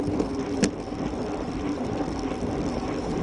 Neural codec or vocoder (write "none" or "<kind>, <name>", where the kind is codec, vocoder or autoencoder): none